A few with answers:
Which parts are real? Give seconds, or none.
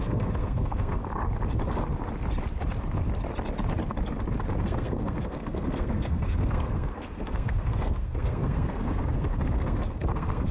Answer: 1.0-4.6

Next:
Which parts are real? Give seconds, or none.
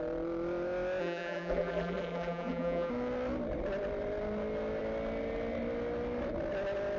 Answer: 0.0-1.0; 2.9-7.0